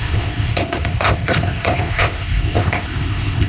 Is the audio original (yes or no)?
no